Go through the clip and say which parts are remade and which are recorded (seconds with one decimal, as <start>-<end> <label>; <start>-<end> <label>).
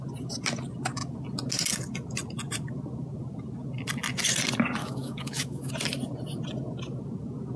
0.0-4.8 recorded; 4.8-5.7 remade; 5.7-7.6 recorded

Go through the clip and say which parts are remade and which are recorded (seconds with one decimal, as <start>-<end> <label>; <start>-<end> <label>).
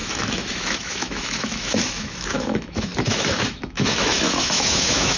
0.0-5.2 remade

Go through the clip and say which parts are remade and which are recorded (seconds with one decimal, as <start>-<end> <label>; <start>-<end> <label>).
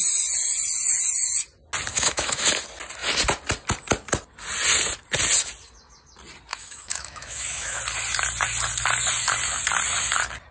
0.0-1.9 recorded; 1.9-2.5 remade; 2.5-6.5 recorded; 6.5-7.8 remade; 7.8-10.5 recorded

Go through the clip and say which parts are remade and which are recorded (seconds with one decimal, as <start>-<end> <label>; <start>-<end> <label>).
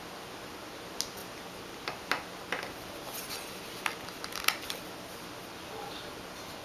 0.0-6.6 recorded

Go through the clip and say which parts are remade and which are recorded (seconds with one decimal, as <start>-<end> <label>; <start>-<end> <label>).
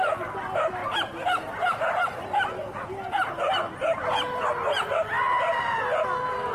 0.0-6.5 recorded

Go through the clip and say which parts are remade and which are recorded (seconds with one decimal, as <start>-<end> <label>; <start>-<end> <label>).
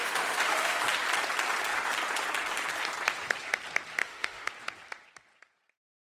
0.0-0.8 remade; 0.8-4.0 recorded; 4.0-4.5 remade; 4.5-6.1 recorded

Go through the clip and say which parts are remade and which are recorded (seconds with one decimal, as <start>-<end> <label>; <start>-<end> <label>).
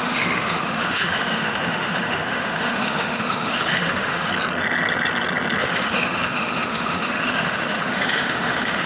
0.0-4.3 remade; 4.3-5.6 recorded; 5.6-8.9 remade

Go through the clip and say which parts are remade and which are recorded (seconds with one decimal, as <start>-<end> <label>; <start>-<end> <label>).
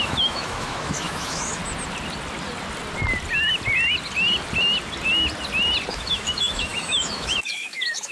0.0-1.6 remade; 1.6-5.9 recorded; 5.9-8.1 remade